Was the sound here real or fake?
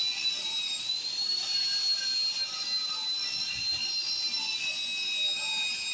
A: real